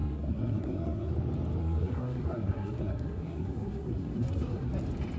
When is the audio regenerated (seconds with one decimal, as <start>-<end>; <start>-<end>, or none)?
0.0-1.1; 1.6-4.7